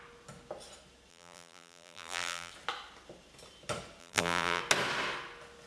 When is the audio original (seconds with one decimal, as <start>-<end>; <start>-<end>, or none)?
0.0-1.1; 2.5-4.0; 4.6-5.7